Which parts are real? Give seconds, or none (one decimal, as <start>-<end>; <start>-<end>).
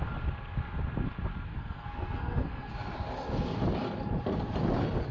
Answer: 0.0-1.5; 2.7-5.1